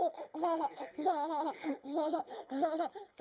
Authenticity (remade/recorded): remade